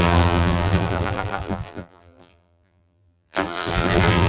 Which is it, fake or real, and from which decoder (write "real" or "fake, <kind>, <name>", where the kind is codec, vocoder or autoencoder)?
fake, vocoder, BigVGAN v2